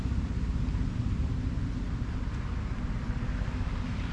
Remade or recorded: recorded